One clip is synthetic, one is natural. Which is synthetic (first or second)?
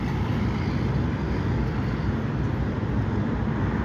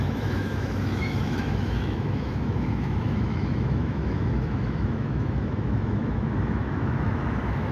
second